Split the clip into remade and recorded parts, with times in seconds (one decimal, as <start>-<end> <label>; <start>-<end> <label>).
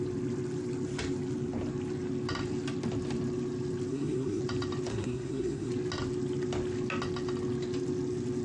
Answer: 0.0-3.9 recorded; 3.9-4.4 remade; 4.4-4.9 recorded; 4.9-5.7 remade; 5.7-8.4 recorded